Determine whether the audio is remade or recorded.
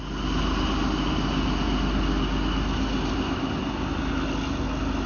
recorded